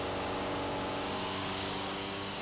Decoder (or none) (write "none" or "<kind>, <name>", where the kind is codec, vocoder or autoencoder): codec, DAC